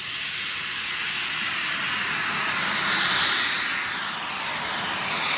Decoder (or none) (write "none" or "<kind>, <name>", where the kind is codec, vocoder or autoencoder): none